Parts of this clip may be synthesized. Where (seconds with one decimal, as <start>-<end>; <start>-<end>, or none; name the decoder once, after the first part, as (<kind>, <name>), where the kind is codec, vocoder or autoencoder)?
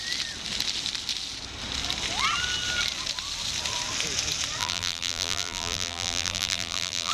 4.6-7.1 (vocoder, BigVGAN v2)